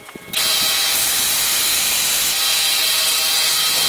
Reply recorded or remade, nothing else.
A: recorded